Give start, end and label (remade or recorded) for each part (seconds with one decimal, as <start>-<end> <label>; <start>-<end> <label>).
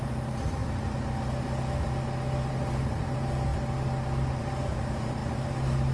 0.0-0.6 remade; 0.6-2.5 recorded; 2.5-3.5 remade; 3.5-4.4 recorded; 4.4-5.9 remade